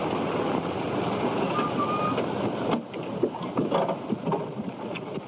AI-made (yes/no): no